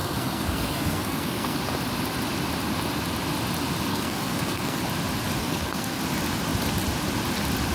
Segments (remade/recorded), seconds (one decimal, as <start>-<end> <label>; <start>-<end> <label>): 0.0-1.6 remade; 1.6-3.9 recorded; 3.9-4.8 remade; 4.8-5.4 recorded; 5.4-6.0 remade; 6.0-7.7 recorded